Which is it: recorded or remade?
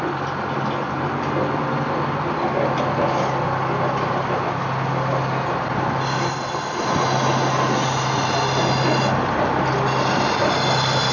recorded